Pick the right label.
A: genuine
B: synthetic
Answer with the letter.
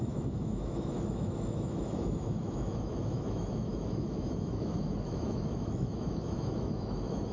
B